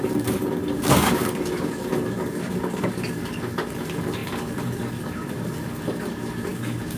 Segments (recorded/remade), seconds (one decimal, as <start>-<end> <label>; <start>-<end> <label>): 0.0-7.0 remade